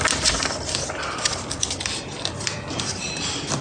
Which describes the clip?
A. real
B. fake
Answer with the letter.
B